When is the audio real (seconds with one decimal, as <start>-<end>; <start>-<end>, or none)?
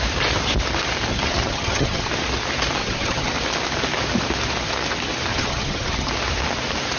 0.0-1.1; 2.1-2.8; 3.3-5.3; 6.1-7.0